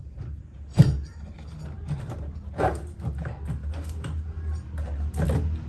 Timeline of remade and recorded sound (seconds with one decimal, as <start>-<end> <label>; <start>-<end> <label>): 0.0-5.7 recorded